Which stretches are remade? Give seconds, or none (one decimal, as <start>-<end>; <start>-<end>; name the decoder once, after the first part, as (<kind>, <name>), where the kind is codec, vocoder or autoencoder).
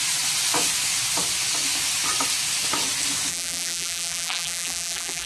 3.3-5.3 (vocoder, BigVGAN v2)